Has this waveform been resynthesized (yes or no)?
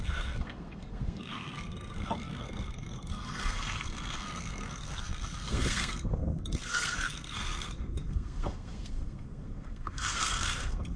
yes